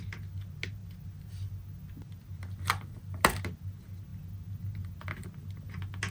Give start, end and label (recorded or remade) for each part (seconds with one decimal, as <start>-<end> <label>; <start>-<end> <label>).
0.0-6.1 recorded